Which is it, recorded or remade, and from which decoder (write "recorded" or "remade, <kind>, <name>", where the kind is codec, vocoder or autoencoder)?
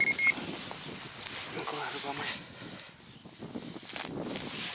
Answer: recorded